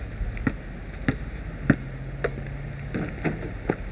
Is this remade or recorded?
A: recorded